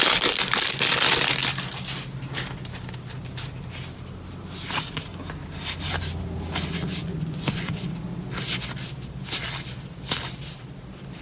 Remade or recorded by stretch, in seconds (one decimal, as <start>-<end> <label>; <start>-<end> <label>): 0.0-7.0 recorded; 7.0-7.9 remade; 7.9-11.2 recorded